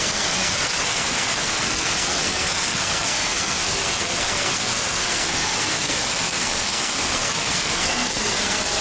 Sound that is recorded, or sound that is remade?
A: remade